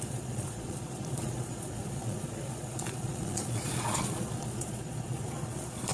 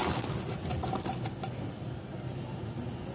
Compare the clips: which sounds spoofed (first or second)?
first